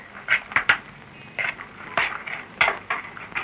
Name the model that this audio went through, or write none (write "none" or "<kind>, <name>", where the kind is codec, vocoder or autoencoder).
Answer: vocoder, BigVGAN v2